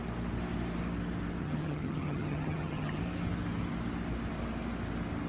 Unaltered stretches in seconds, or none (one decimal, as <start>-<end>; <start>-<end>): 0.0-1.4; 3.0-5.3